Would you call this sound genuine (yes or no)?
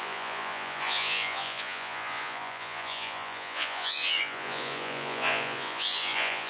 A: no